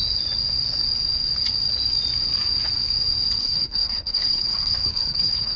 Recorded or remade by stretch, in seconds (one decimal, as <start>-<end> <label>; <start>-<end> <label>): 0.0-3.4 recorded; 3.4-5.6 remade